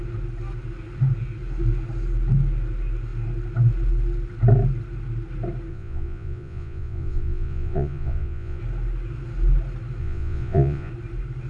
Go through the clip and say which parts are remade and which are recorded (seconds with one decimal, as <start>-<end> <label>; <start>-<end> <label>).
0.0-5.7 recorded; 5.7-8.6 remade; 8.6-10.0 recorded; 10.0-10.9 remade; 10.9-11.5 recorded